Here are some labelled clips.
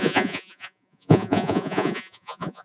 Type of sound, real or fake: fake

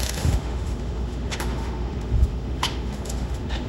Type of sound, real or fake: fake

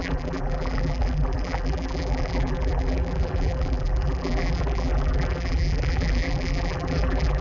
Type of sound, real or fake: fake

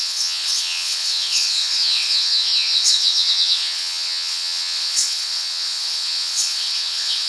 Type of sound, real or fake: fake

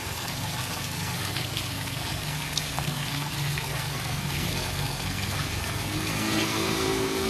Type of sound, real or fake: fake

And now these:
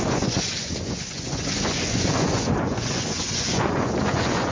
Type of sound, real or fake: fake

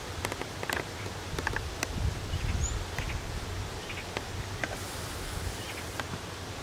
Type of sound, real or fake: real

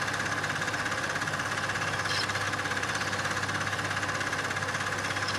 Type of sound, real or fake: real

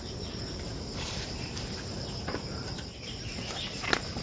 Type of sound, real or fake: fake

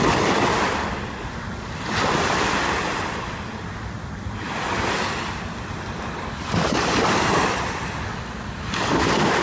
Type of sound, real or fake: real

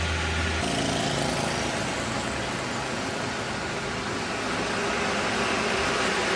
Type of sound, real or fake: real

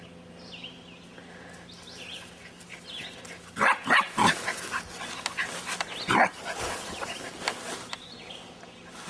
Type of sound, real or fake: real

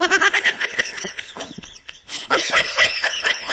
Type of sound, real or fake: fake